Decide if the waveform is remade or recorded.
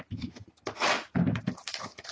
recorded